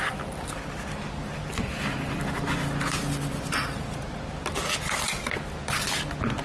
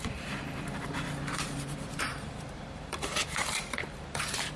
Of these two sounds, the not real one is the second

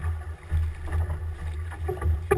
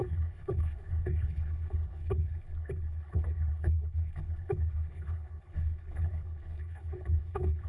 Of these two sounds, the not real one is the second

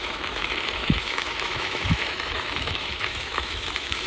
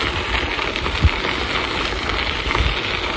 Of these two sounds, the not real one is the first